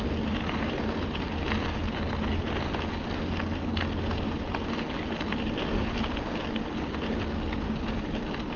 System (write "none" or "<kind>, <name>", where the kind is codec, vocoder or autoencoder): none